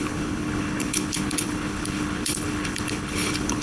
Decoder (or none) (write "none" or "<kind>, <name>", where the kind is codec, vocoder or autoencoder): codec, HILCodec